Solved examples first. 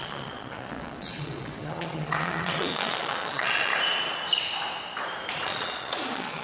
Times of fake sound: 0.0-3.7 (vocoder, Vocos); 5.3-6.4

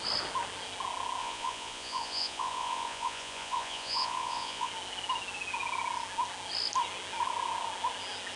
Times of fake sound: 1.2-4.7 (vocoder, Vocos)

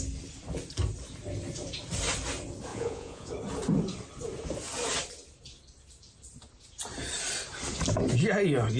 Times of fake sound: 2.7-3.3 (vocoder, Vocos)

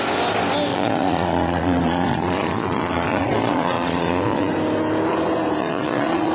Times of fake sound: 0.7-4.5 (vocoder, Vocos); 5.6-6.3

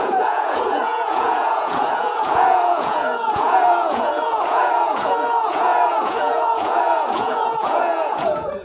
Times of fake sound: 0.0-8.6 (vocoder, Vocos)

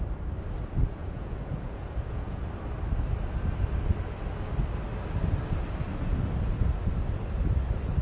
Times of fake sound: 1.0-2.5 (vocoder, Vocos)

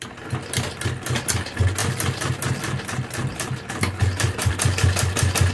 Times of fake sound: none

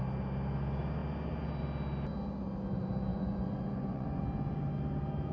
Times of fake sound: 3.1-4.2 (vocoder, Vocos)